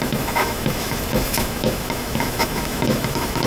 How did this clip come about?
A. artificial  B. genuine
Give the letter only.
A